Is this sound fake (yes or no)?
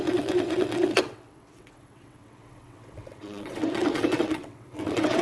yes